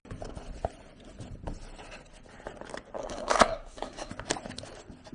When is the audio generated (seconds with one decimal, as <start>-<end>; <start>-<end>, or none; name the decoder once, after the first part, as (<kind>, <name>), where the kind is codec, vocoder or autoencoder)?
3.0-4.1 (codec, SNAC)